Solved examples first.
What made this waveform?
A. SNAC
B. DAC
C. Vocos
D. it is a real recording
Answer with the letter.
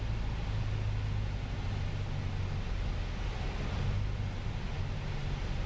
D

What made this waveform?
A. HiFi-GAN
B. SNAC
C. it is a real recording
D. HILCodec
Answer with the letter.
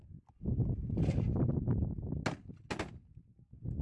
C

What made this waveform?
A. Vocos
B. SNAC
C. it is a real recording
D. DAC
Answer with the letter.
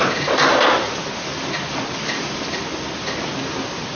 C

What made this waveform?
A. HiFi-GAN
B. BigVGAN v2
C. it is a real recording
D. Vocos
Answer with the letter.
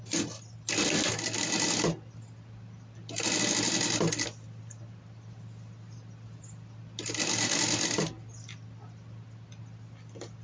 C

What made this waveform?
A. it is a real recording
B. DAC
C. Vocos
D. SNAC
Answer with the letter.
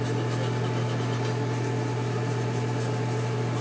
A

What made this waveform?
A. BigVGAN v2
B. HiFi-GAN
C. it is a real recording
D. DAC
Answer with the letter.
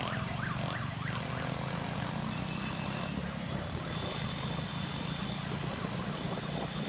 C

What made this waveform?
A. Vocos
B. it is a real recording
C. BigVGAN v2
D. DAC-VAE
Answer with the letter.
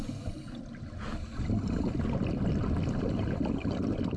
B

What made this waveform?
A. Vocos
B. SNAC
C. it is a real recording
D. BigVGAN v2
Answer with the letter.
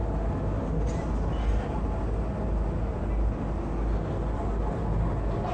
C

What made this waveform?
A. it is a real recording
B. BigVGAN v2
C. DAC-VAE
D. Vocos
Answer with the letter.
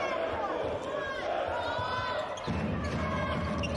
A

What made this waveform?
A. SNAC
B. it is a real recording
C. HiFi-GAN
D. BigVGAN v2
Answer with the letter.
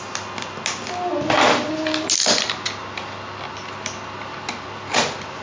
B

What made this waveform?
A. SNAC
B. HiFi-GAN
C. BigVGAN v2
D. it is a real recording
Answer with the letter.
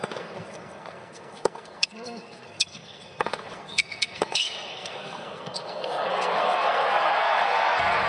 A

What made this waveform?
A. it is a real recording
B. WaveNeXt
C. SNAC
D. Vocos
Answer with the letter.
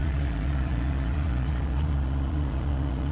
D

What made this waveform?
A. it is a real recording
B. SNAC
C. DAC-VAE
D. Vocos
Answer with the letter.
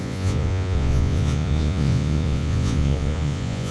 D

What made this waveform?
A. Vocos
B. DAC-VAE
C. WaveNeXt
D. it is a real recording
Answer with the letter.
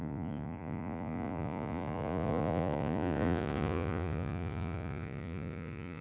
A